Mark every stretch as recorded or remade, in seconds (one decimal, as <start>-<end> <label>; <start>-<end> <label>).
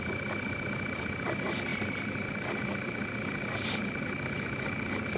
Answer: 0.0-5.2 recorded